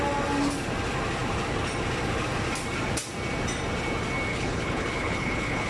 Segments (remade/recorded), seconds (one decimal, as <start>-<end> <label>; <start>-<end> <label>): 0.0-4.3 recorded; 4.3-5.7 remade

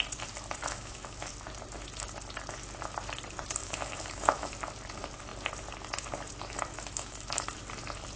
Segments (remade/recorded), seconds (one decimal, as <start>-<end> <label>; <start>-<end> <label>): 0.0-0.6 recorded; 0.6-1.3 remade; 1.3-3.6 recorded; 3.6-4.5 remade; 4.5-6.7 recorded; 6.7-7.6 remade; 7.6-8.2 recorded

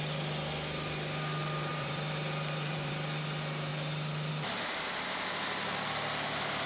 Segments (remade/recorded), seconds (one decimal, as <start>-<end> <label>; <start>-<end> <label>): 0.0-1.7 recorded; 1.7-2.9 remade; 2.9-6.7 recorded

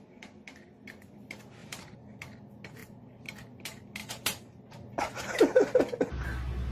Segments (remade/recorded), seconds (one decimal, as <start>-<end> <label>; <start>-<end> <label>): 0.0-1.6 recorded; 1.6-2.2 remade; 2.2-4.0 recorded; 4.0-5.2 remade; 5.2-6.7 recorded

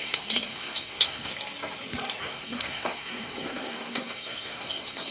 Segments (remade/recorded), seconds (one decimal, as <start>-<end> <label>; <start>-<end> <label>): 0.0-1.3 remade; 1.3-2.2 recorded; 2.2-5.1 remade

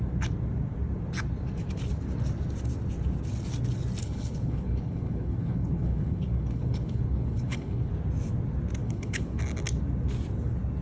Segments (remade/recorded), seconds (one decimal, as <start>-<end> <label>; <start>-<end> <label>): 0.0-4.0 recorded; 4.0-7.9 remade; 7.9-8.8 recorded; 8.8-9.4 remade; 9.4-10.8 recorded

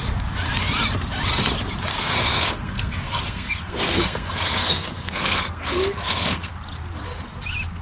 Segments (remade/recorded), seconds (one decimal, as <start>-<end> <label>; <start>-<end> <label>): 0.0-1.9 recorded; 1.9-6.5 remade; 6.5-7.8 recorded

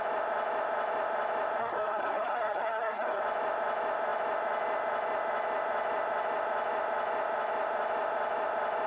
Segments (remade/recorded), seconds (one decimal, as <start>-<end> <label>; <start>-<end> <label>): 0.0-1.6 recorded; 1.6-3.2 remade; 3.2-8.9 recorded